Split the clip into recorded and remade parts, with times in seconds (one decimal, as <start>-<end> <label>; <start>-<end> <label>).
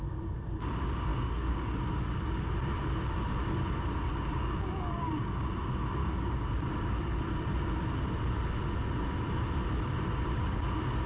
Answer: 0.0-1.1 recorded; 1.1-1.8 remade; 1.8-4.1 recorded; 4.1-5.4 remade; 5.4-6.0 recorded; 6.0-6.5 remade; 6.5-11.1 recorded